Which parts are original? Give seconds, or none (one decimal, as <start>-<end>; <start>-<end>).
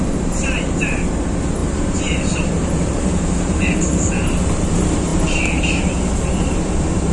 none